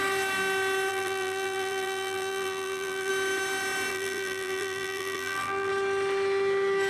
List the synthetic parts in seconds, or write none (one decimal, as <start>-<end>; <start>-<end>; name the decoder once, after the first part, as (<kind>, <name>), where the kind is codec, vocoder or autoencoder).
0.9-3.1 (vocoder, BigVGAN v2); 3.9-5.7